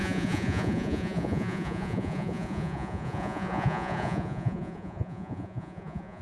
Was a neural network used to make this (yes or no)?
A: yes